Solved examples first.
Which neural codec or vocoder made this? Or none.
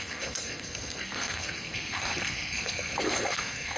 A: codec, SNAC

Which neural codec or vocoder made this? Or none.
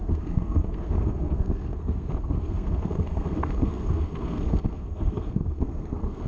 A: codec, SNAC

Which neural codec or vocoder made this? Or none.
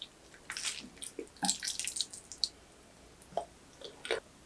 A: none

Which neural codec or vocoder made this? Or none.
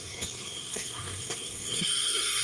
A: codec, SNAC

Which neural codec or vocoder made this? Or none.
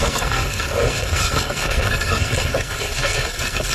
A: codec, SNAC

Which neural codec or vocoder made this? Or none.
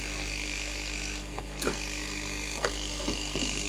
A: codec, SNAC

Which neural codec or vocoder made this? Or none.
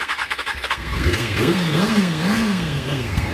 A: codec, SNAC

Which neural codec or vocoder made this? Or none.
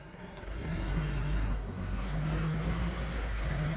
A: codec, SNAC